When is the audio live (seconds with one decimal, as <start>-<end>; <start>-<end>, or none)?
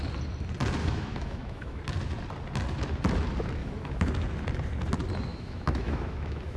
0.0-0.8; 1.8-3.6; 4.1-5.3